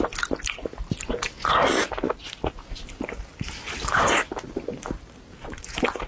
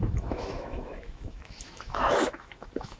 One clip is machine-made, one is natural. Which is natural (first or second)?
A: first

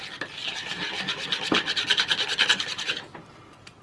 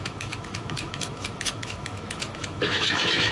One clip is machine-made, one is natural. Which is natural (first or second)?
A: first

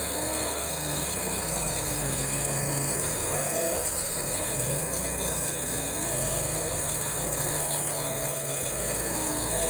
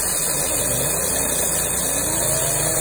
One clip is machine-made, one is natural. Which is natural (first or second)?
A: second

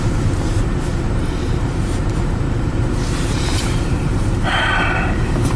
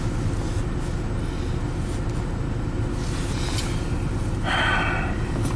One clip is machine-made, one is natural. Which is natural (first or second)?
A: second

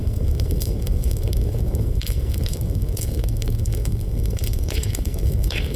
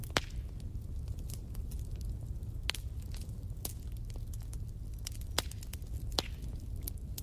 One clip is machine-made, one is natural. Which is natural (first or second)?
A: second